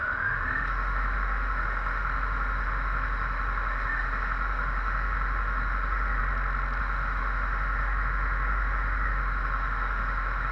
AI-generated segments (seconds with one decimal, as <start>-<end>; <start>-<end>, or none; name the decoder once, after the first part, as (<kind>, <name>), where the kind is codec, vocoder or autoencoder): 0.0-6.2 (autoencoder, DAC-VAE); 6.8-10.5